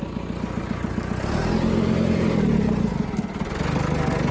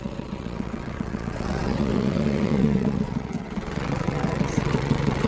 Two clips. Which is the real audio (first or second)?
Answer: first